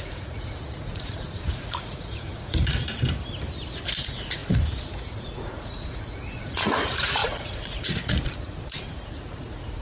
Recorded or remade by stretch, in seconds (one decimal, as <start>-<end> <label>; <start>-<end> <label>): 0.0-2.8 remade; 2.8-4.0 recorded; 4.0-9.8 remade